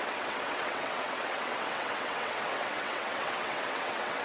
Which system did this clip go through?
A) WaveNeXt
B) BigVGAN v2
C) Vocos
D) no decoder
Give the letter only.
A